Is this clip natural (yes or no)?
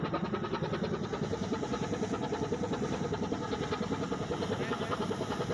yes